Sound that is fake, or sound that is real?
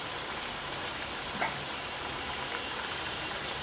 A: fake